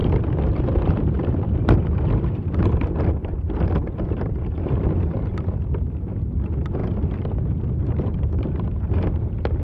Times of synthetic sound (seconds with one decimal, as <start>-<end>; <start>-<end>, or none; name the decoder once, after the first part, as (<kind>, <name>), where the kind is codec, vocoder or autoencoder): 0.6-9.6 (vocoder, BigVGAN v2)